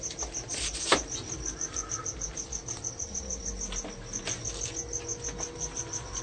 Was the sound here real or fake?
real